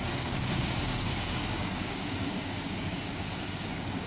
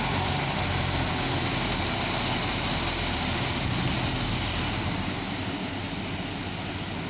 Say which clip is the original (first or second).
second